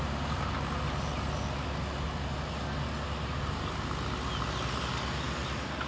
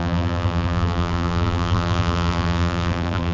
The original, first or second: first